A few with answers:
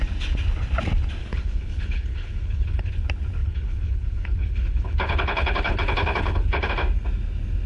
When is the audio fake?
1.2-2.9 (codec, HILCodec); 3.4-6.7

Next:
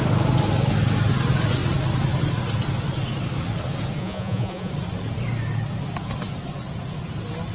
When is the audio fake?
4.0-4.7 (vocoder, Vocos)

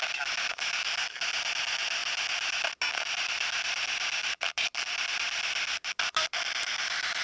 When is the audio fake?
none

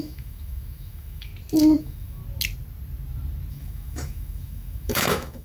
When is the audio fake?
0.0-1.3 (autoencoder, DAC-VAE); 1.8-2.2; 3.5-5.4